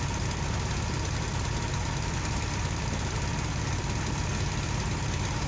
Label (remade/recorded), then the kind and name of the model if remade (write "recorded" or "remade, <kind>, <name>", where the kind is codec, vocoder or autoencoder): recorded